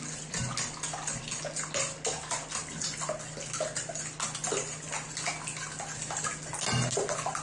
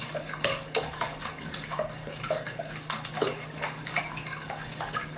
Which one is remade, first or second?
second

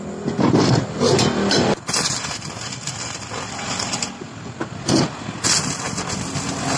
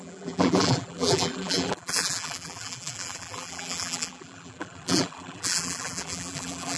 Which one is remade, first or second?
second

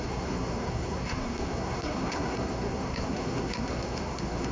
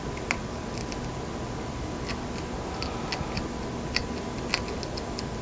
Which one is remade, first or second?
first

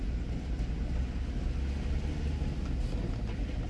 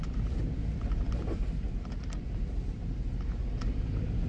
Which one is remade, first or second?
second